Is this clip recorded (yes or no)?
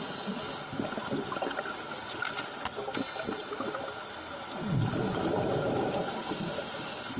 yes